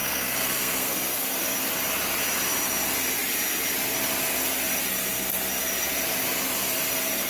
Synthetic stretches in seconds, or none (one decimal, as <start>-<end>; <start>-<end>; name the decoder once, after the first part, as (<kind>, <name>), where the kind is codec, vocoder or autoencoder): 0.0-1.4 (codec, SNAC)